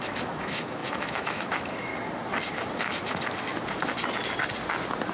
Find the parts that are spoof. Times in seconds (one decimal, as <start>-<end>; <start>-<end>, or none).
0.0-1.9